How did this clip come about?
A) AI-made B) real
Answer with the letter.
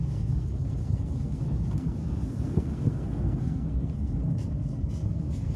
A